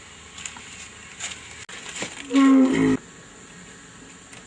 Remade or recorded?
recorded